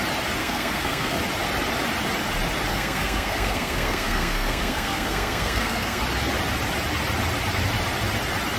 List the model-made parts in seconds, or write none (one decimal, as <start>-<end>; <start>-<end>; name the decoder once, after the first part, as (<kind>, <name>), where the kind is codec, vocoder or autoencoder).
0.4-1.2 (codec, SNAC); 2.7-6.0